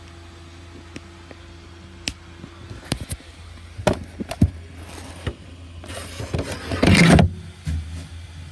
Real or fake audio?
real